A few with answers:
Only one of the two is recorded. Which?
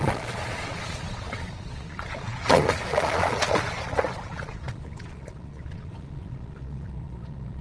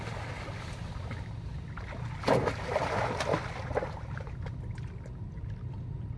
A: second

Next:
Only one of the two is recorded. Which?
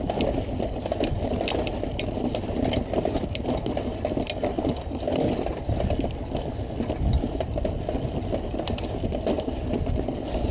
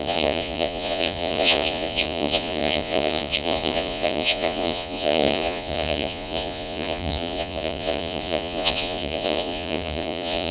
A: first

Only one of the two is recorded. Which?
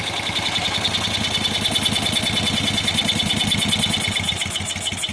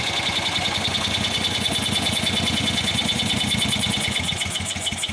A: first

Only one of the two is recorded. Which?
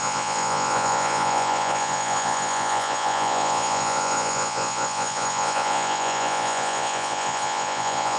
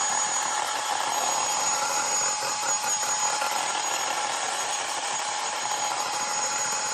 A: second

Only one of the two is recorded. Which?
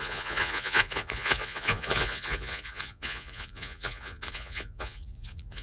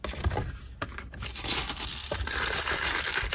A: second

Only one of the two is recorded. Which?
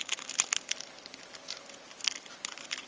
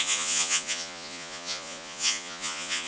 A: first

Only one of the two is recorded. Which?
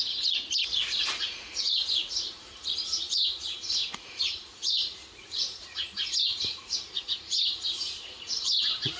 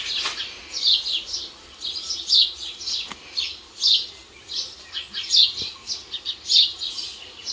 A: second